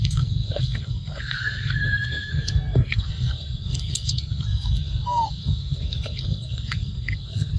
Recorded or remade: remade